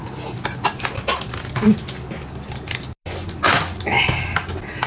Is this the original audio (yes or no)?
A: yes